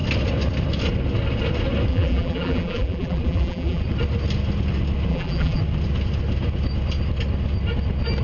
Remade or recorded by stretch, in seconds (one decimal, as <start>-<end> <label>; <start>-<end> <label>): 0.0-1.9 recorded; 1.9-3.8 remade; 3.8-5.1 recorded; 5.1-5.6 remade; 5.6-8.2 recorded

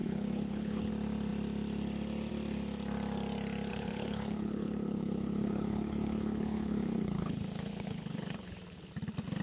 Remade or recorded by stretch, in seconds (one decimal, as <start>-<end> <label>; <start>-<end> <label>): 0.0-0.9 remade; 0.9-3.7 recorded; 3.7-8.9 remade; 8.9-9.4 recorded

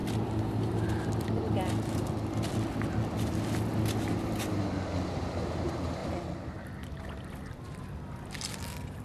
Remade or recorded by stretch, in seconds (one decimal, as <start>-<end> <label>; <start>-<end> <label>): 0.0-9.0 recorded

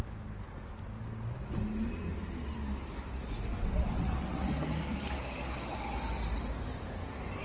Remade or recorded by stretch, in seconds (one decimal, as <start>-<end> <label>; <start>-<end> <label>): 0.0-3.5 recorded; 3.5-4.5 remade; 4.5-7.4 recorded